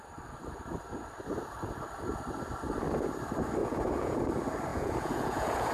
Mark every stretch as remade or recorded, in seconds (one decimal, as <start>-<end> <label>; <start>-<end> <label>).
0.0-3.6 recorded; 3.6-4.2 remade; 4.2-4.7 recorded; 4.7-5.7 remade

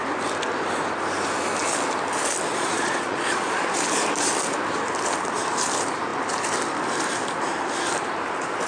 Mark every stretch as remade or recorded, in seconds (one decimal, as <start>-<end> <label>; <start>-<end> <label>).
0.0-2.5 recorded; 2.5-3.7 remade; 3.7-8.7 recorded